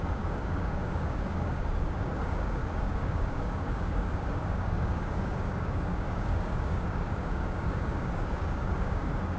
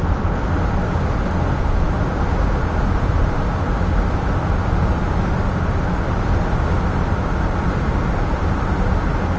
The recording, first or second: second